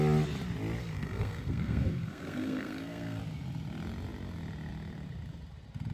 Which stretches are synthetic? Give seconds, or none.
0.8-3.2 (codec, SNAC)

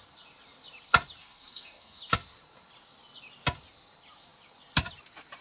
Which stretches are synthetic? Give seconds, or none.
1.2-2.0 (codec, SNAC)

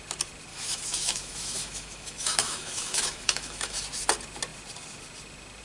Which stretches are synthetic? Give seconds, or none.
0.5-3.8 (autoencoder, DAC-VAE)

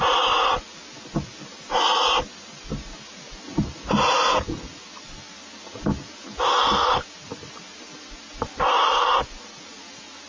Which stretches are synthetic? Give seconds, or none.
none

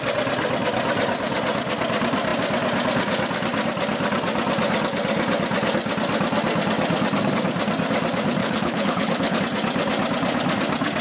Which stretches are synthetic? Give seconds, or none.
8.4-9.4 (codec, HILCodec)

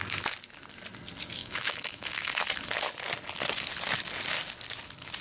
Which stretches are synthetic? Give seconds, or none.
1.4-2.3 (autoencoder, DAC-VAE)

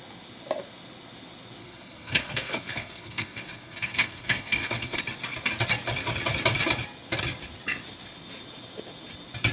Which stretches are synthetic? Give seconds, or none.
1.6-5.0 (codec, SNAC)